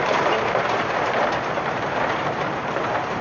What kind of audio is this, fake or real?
fake